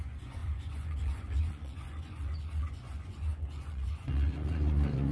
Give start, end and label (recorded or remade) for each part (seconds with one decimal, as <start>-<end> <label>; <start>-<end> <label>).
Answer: 0.0-5.1 remade